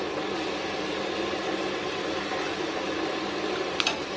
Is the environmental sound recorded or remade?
recorded